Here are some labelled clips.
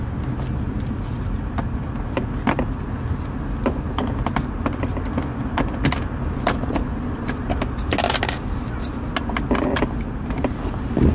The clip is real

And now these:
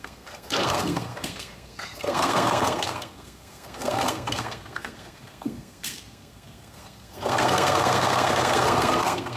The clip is fake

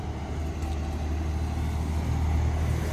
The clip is real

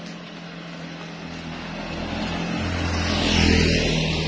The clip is real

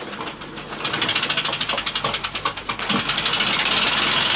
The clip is real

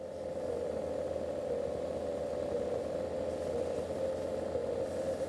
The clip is real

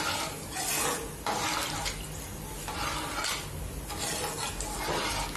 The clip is real